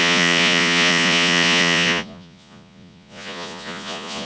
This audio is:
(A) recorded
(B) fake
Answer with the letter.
B